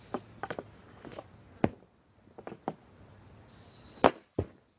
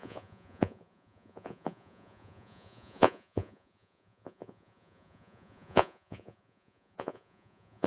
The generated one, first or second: second